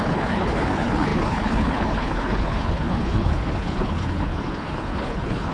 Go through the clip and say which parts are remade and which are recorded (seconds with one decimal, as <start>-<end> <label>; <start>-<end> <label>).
0.0-5.5 remade